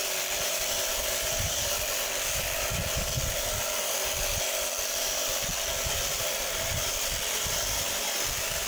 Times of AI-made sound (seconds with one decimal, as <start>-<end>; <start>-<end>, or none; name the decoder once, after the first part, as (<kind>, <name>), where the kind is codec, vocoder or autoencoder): 0.0-8.7 (vocoder, BigVGAN v2)